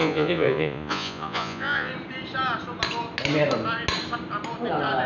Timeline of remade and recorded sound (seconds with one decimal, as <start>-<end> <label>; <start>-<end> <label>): 0.0-1.9 remade; 1.9-5.1 recorded